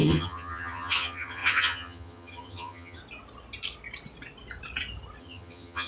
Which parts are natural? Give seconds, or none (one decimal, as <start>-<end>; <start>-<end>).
3.0-5.2